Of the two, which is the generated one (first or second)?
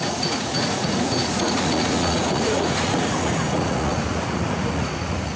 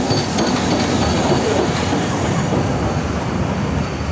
first